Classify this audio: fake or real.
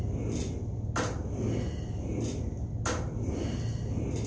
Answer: real